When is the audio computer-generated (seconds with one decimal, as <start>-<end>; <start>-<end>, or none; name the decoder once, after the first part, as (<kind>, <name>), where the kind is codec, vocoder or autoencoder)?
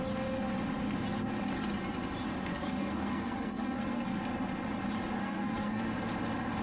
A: 2.5-4.2 (codec, SNAC); 5.2-5.8